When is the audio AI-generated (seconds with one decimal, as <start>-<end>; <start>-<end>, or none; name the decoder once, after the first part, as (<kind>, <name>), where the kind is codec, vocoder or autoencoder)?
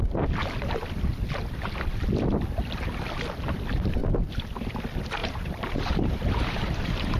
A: 5.2-7.2 (vocoder, BigVGAN v2)